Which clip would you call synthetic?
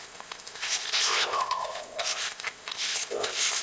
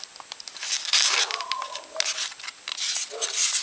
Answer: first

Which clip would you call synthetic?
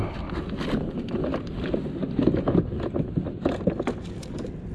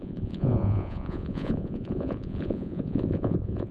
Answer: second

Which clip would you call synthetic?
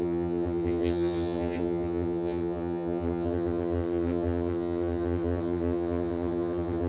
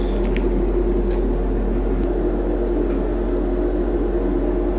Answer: first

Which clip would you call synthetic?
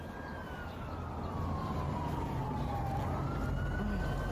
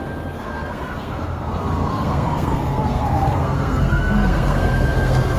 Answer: second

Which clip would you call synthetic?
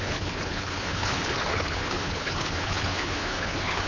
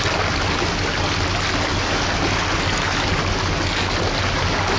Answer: first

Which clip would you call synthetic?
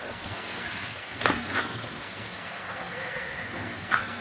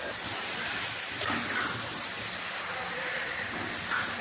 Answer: first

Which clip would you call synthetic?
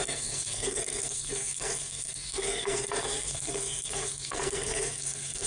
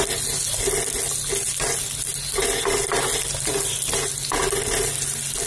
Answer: first